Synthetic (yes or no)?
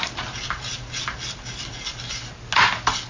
no